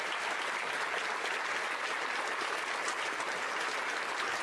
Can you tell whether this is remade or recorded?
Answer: recorded